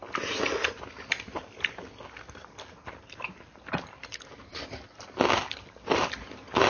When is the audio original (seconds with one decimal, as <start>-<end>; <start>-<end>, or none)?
0.0-6.7